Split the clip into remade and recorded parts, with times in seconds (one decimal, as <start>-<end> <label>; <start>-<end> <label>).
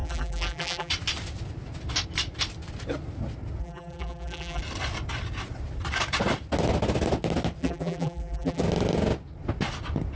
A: 0.0-0.9 remade; 0.9-3.6 recorded; 3.6-4.6 remade; 4.6-7.6 recorded; 7.6-8.6 remade; 8.6-10.2 recorded